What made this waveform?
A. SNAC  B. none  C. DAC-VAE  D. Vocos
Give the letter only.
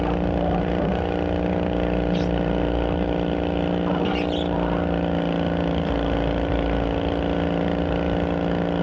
B